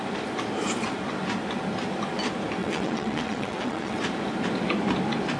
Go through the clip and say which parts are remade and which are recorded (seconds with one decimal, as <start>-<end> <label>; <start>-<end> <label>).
0.0-2.6 recorded; 2.6-4.0 remade; 4.0-5.4 recorded